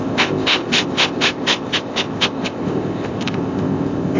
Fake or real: fake